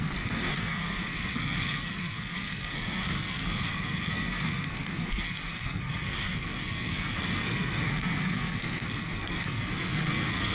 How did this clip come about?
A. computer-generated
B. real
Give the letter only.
A